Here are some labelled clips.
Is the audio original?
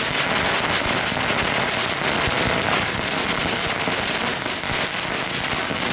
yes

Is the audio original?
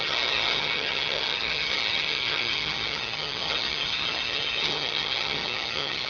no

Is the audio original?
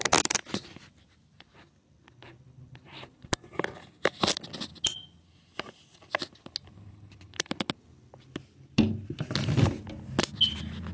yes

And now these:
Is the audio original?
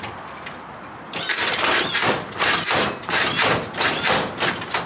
yes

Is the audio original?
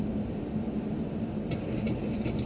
yes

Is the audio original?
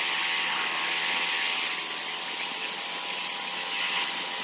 yes